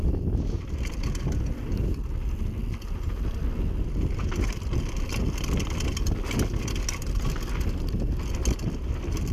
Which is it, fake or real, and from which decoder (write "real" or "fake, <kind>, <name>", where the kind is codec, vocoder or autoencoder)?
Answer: real